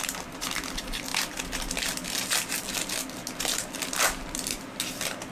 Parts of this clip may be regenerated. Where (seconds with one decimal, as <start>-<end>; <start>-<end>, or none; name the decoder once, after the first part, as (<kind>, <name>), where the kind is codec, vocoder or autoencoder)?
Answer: none